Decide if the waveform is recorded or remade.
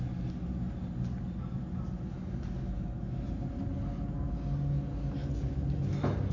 recorded